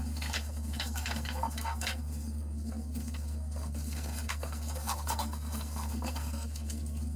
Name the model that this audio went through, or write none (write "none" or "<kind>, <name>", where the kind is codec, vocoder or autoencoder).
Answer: codec, SNAC